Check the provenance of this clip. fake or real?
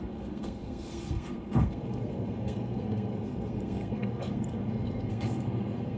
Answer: fake